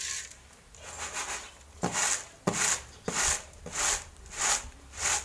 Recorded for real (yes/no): yes